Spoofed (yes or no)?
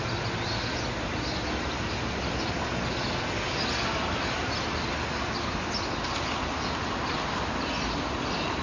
no